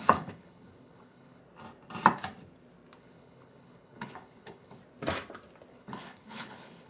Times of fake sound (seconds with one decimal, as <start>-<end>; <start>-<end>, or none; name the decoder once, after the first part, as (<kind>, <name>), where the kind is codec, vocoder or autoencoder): 0.0-1.4 (codec, HILCodec); 3.0-4.8; 5.7-6.9